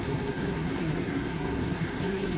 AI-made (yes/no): yes